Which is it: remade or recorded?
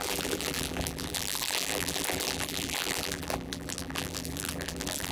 remade